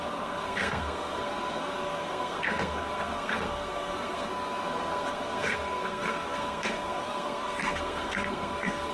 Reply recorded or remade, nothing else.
remade